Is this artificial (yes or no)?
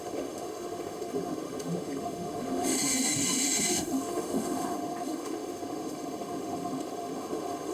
yes